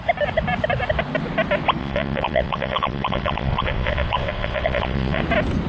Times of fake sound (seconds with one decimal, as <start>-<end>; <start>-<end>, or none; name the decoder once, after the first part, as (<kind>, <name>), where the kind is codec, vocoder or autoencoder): 1.8-5.2 (vocoder, WaveNeXt)